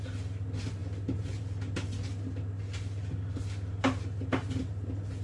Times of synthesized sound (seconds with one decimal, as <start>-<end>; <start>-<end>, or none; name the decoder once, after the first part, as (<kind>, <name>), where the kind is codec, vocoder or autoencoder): none